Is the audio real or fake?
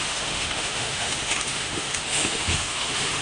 fake